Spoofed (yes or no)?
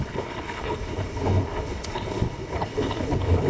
yes